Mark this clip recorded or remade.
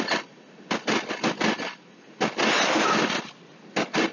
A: recorded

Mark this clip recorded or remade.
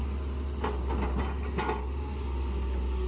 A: recorded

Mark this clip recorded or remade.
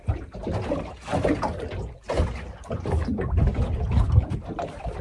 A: recorded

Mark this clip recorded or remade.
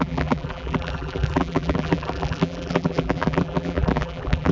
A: remade